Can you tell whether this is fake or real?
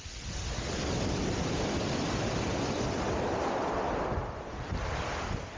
fake